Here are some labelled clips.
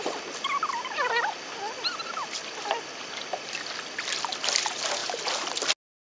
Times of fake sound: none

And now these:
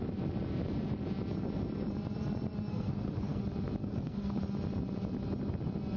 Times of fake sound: 2.7-3.4; 3.8-4.4

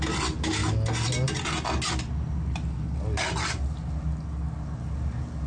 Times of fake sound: none

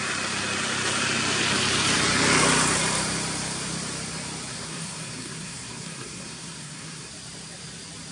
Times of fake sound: 4.5-7.1

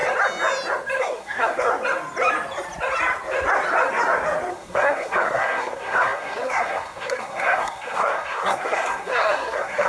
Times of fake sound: 1.0-1.7; 4.5-9.9

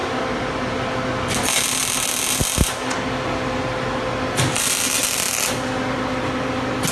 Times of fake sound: none

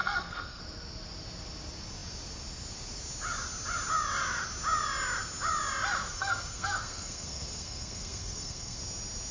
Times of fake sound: 0.0-0.6; 6.0-8.8

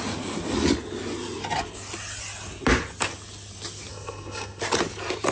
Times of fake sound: 3.9-4.6